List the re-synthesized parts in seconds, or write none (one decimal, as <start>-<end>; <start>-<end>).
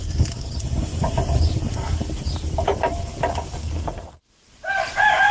3.6-4.2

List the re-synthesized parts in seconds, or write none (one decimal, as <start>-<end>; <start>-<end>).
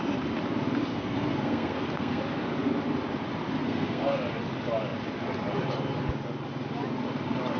0.9-2.2; 3.6-4.2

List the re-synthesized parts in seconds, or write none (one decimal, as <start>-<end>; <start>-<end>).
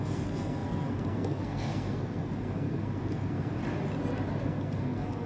0.0-3.6; 4.4-5.3